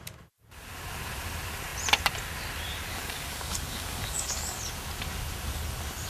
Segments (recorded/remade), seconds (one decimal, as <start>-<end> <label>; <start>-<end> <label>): 0.0-2.9 recorded; 2.9-4.6 remade; 4.6-6.1 recorded